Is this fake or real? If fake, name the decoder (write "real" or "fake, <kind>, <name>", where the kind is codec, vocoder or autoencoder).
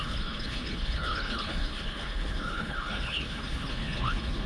fake, codec, HILCodec